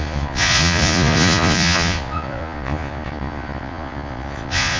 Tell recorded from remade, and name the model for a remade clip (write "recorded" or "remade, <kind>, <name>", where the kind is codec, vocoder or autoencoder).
remade, vocoder, Vocos